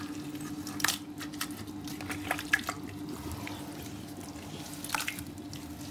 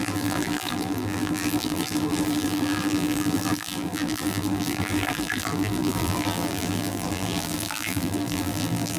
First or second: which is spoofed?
second